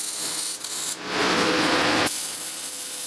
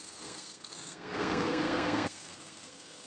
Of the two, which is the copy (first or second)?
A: second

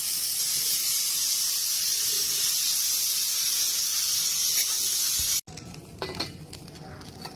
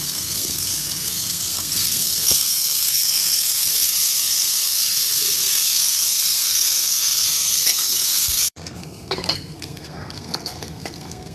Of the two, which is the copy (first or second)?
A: second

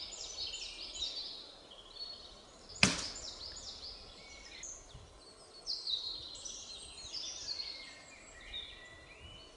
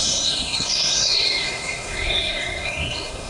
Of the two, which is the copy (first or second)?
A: second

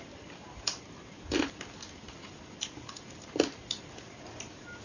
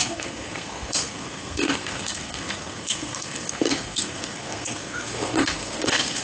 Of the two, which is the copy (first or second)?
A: second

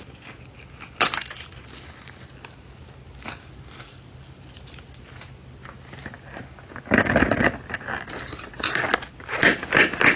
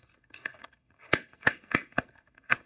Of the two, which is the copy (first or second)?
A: second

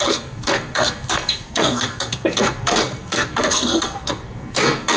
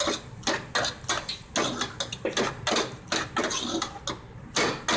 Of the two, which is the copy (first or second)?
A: first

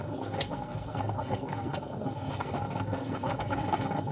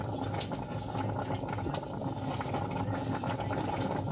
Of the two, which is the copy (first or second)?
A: first